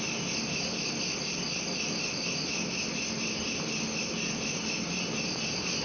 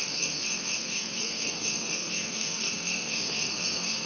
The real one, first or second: first